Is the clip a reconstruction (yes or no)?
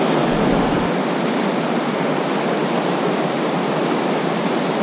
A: no